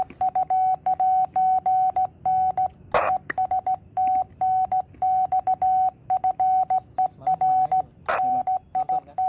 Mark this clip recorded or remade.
recorded